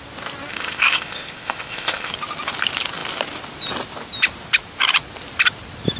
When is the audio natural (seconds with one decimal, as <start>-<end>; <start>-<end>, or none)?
0.0-0.5; 2.1-6.0